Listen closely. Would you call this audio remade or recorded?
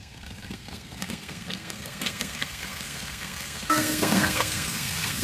remade